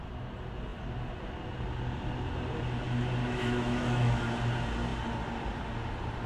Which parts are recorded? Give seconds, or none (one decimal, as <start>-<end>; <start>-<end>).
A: 0.0-3.2; 4.2-6.3